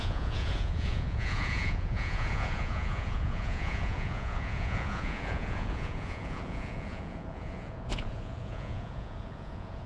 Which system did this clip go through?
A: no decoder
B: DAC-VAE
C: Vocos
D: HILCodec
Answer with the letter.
C